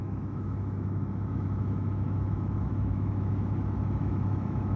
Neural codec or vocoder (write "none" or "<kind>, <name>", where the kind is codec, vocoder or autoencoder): autoencoder, DAC-VAE